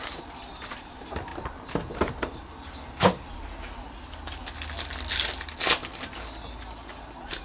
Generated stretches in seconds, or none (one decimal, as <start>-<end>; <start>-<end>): none